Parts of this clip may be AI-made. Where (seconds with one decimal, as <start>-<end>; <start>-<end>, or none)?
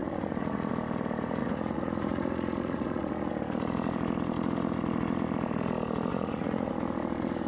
0.0-0.7; 1.4-3.3; 6.1-6.7